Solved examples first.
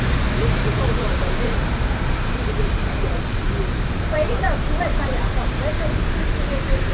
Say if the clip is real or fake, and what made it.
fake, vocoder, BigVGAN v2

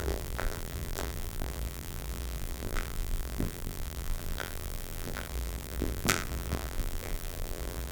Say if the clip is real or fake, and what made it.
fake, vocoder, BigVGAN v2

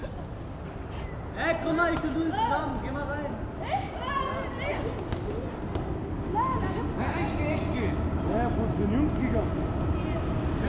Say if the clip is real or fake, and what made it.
real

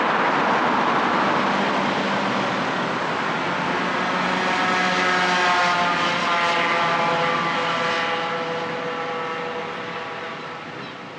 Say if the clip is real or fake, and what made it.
real